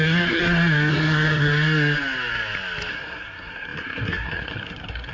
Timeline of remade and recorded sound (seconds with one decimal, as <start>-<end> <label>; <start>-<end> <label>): 0.0-0.4 remade; 0.4-0.9 recorded; 0.9-1.5 remade; 1.5-2.9 recorded; 2.9-5.1 remade